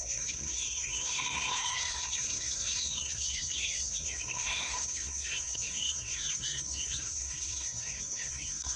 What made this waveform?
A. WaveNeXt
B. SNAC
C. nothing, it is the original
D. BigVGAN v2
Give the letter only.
B